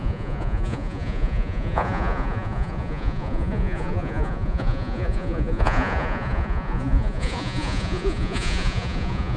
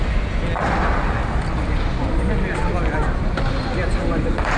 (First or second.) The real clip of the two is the second